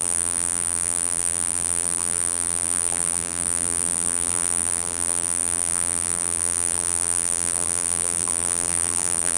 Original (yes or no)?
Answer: no